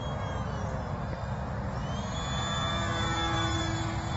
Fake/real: real